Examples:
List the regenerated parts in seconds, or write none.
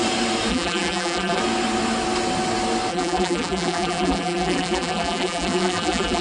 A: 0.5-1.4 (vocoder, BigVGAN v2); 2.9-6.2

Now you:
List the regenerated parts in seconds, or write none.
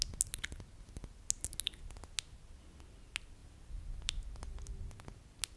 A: 3.4-4.7 (vocoder, BigVGAN v2)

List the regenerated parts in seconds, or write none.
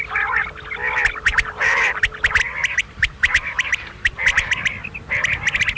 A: 1.3-2.0 (vocoder, BigVGAN v2); 2.8-4.0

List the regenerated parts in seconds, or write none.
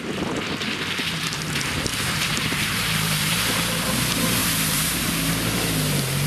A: 1.9-3.4 (vocoder, BigVGAN v2); 4.4-5.3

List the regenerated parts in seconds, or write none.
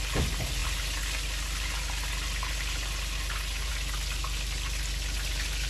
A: none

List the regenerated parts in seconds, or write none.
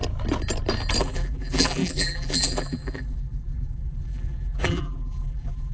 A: 1.0-5.7 (vocoder, BigVGAN v2)